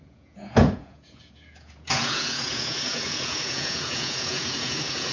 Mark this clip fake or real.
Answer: fake